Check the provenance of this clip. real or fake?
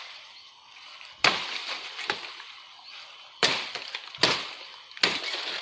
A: fake